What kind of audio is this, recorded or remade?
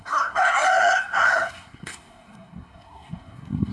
remade